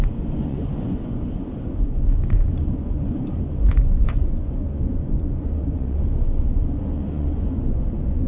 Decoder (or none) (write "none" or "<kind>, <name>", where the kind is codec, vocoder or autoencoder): vocoder, Vocos